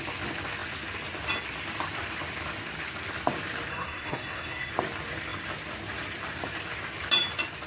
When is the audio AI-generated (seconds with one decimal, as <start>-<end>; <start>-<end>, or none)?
3.7-4.7